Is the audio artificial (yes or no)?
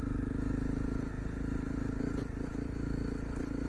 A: no